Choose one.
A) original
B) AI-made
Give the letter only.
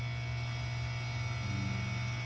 A